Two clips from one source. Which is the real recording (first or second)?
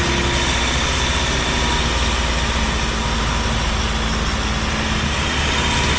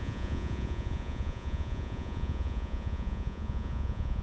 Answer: first